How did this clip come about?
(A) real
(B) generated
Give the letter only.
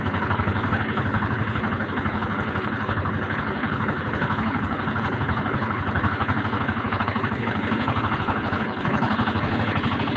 B